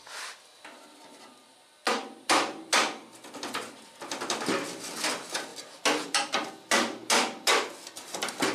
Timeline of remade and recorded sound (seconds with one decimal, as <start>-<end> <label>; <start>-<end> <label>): 0.0-8.5 recorded